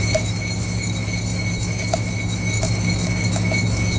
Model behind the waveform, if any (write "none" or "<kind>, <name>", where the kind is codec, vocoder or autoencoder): autoencoder, DAC-VAE